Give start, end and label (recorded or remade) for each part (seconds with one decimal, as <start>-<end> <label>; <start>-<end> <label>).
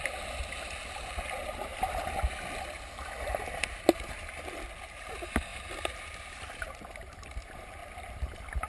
0.0-8.7 recorded